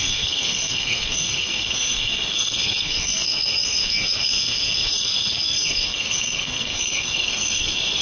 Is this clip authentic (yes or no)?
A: no